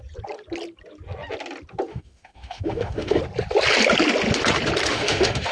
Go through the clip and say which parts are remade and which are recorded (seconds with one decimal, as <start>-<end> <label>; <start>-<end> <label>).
0.0-1.9 recorded; 1.9-3.2 remade; 3.2-4.9 recorded; 4.9-5.5 remade